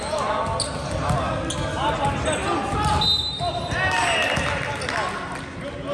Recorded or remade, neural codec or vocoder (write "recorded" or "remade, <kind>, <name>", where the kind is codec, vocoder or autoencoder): recorded